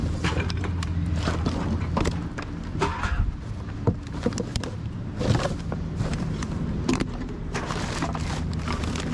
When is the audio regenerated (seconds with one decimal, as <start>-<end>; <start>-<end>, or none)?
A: 0.0-1.3; 2.9-3.7; 4.5-8.5